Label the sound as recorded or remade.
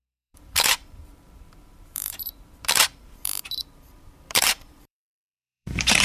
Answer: remade